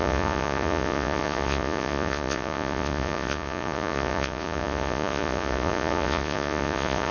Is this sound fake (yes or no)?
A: yes